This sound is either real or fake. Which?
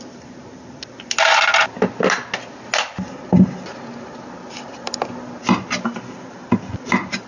real